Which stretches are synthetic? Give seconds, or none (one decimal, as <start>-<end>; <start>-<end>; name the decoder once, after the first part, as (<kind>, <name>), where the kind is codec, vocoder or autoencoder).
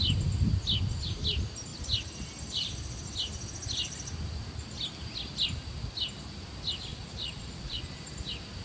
6.9-7.8 (vocoder, Vocos)